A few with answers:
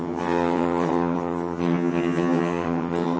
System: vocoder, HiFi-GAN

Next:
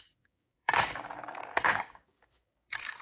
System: codec, DAC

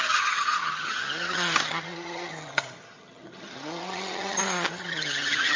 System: vocoder, HiFi-GAN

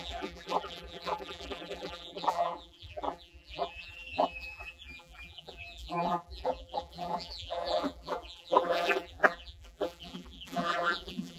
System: vocoder, BigVGAN v2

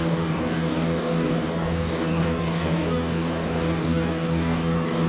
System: codec, DAC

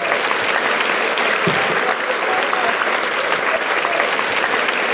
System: none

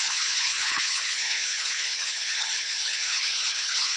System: codec, HILCodec